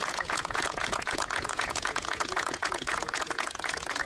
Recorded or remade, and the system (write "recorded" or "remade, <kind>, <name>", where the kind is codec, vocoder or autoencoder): remade, vocoder, Vocos